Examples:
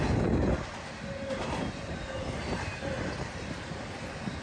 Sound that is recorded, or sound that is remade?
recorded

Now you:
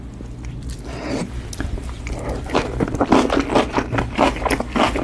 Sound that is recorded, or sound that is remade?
recorded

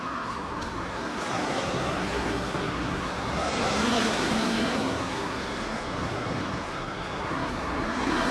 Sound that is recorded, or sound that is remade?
remade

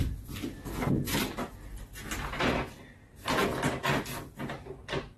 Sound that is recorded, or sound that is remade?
recorded